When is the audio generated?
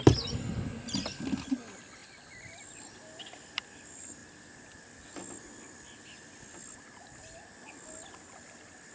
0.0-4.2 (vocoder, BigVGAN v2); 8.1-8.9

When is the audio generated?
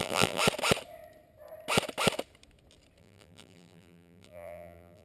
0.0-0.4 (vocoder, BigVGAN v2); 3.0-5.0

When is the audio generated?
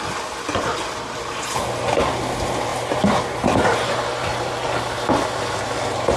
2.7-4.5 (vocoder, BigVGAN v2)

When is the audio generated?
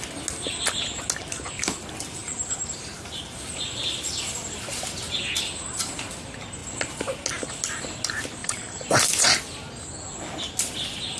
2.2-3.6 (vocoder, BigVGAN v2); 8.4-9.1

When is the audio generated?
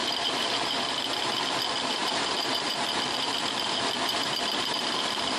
0.0-1.0 (vocoder, BigVGAN v2); 2.0-5.4